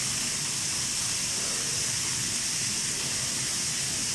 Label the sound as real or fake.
real